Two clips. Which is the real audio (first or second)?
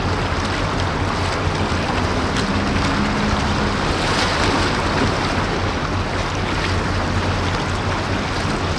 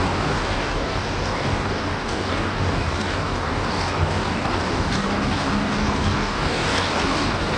first